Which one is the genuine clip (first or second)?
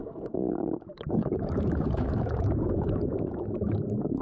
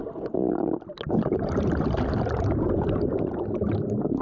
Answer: second